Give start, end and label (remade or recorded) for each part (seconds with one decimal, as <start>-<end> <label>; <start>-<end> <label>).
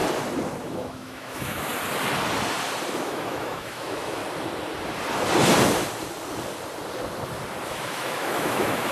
0.0-0.6 recorded; 0.6-1.7 remade; 1.7-2.9 recorded; 2.9-4.2 remade; 4.2-7.7 recorded; 7.7-8.9 remade